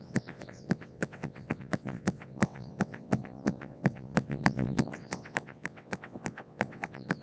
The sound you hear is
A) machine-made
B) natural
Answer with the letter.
A